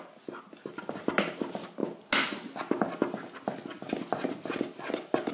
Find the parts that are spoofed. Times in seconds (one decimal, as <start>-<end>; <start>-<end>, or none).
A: none